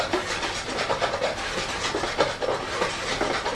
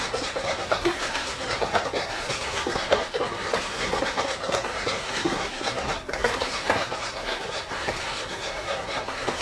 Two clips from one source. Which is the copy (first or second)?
second